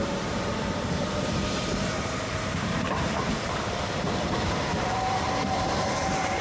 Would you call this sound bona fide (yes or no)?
no